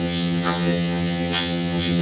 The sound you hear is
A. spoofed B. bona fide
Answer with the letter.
A